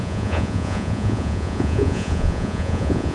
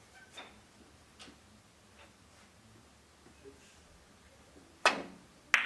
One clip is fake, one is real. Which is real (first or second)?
second